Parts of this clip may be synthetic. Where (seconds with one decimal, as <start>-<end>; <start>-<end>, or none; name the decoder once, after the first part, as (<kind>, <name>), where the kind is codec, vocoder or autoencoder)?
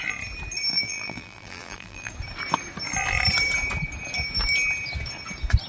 0.7-2.1 (vocoder, BigVGAN v2)